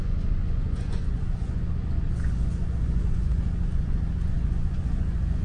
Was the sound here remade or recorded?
remade